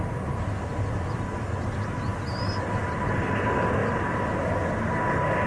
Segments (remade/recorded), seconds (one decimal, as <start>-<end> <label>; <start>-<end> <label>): 0.0-5.5 recorded